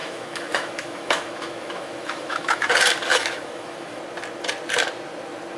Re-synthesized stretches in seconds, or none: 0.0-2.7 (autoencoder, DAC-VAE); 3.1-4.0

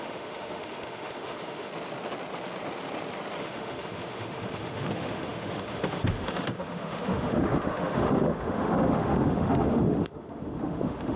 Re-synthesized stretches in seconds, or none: 0.0-1.7 (autoencoder, DAC-VAE); 3.4-11.2

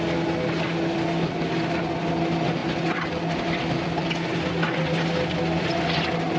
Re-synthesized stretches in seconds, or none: none

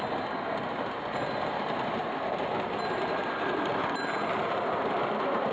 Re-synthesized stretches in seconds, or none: none

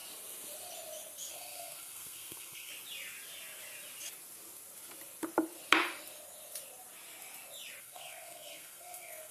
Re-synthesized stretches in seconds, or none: 1.3-2.7 (codec, SNAC); 7.8-9.3